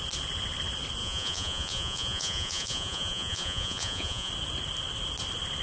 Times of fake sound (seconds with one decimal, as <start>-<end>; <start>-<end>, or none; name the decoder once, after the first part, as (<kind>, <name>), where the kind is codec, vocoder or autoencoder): 1.0-4.3 (vocoder, Vocos)